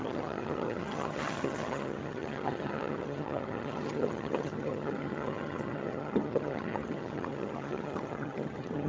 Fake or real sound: fake